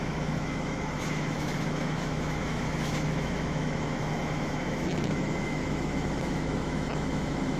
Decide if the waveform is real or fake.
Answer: fake